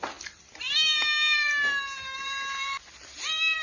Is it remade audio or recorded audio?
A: recorded